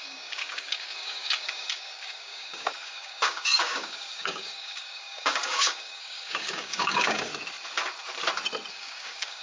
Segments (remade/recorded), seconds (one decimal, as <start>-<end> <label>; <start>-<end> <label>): 0.0-7.3 remade; 7.3-8.7 recorded; 8.7-9.4 remade